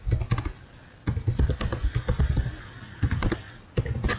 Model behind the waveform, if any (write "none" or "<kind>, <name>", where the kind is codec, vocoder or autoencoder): none